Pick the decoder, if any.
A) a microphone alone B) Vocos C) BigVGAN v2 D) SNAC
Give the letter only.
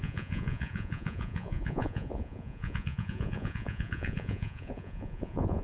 B